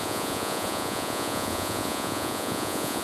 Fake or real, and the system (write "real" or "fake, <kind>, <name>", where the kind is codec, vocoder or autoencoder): fake, vocoder, Vocos